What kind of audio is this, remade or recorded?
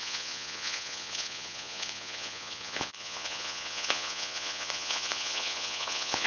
remade